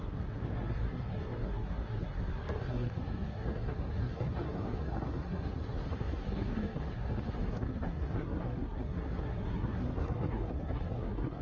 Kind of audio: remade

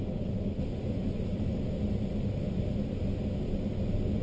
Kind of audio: recorded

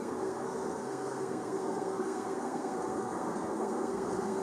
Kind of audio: remade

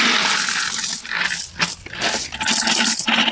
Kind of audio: recorded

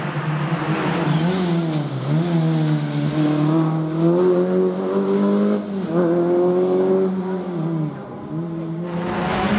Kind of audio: recorded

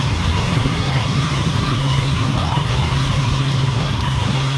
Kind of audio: remade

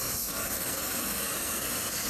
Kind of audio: remade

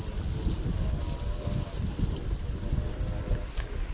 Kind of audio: recorded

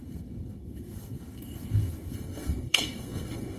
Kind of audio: remade